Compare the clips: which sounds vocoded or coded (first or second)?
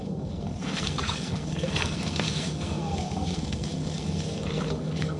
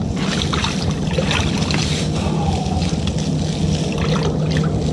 first